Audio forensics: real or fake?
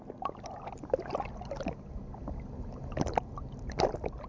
real